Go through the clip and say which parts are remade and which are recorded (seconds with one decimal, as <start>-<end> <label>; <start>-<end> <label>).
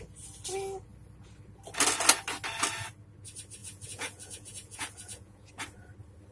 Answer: 0.0-3.6 recorded; 3.6-5.5 remade; 5.5-6.3 recorded